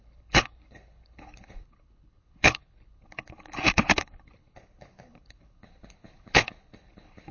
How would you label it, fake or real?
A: fake